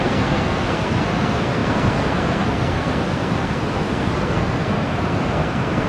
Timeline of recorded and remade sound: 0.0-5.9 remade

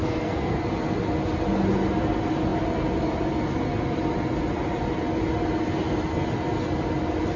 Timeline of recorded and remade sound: 0.0-0.6 remade; 0.6-7.4 recorded

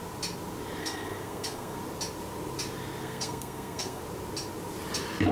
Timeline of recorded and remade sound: 0.0-0.8 recorded; 0.8-1.8 remade; 1.8-3.0 recorded; 3.0-4.0 remade; 4.0-5.3 recorded

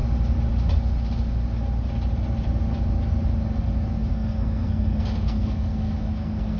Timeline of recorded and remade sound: 0.0-4.1 recorded; 4.1-6.6 remade

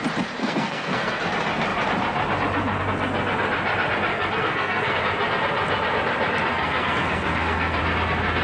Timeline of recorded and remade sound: 0.0-0.4 recorded; 0.4-1.2 remade; 1.2-4.1 recorded; 4.1-5.0 remade; 5.0-6.5 recorded; 6.5-7.8 remade; 7.8-8.4 recorded

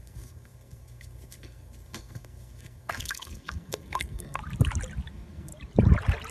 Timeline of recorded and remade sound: 0.0-4.4 remade; 4.4-5.1 recorded; 5.1-5.5 remade; 5.5-6.3 recorded

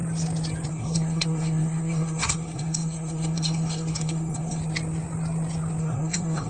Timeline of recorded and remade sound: 0.0-0.7 recorded; 0.7-4.6 remade; 4.6-5.8 recorded; 5.8-6.5 remade